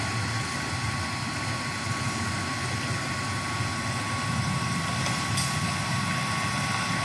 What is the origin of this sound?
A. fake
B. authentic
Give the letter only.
B